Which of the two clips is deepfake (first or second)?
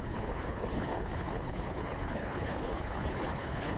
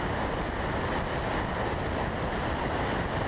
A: first